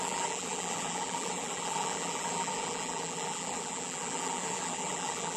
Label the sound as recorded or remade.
remade